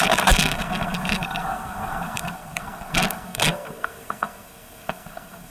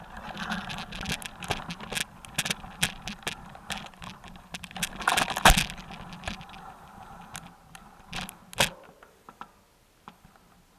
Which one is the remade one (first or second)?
first